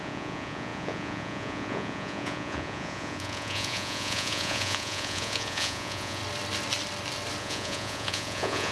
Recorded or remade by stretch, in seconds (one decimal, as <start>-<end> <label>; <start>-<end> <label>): 0.0-6.2 remade; 6.2-7.4 recorded; 7.4-8.7 remade